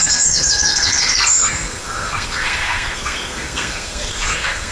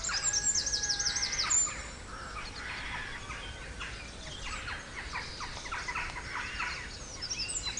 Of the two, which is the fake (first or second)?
first